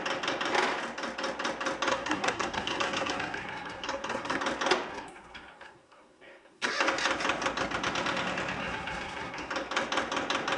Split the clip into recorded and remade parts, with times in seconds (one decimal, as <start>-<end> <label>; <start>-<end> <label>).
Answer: 0.0-1.9 recorded; 1.9-4.4 remade; 4.4-4.9 recorded; 4.9-6.7 remade; 6.7-8.6 recorded; 8.6-9.5 remade; 9.5-10.6 recorded